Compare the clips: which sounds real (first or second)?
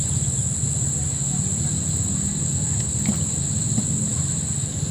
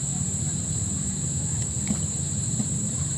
first